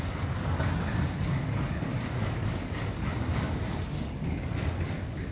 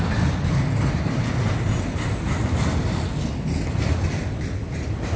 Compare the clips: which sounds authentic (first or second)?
second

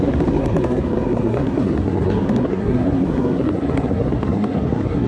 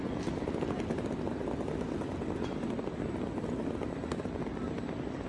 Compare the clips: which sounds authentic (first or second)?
second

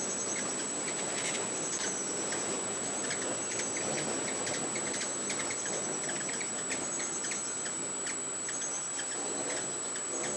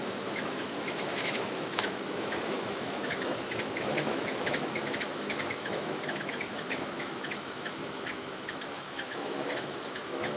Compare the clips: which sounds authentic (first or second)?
first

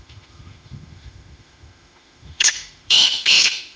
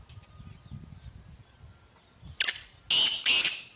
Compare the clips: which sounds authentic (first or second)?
second